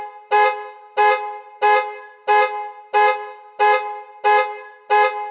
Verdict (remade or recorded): recorded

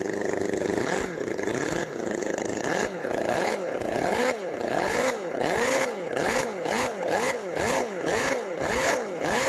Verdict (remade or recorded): remade